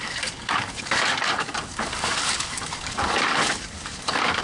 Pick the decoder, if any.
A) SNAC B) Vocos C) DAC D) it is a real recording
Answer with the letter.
C